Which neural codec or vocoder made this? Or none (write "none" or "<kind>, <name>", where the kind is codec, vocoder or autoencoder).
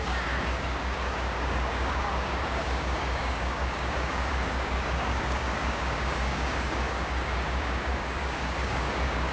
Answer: codec, DAC